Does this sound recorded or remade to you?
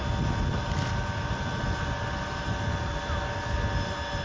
recorded